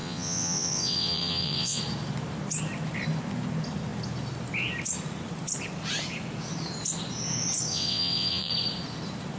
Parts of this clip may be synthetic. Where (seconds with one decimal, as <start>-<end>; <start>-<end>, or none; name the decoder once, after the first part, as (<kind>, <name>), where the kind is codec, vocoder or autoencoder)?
0.0-1.8 (vocoder, WaveNeXt); 7.7-8.5